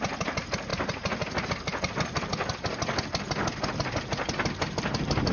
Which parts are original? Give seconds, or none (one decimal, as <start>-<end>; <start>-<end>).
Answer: 0.0-5.3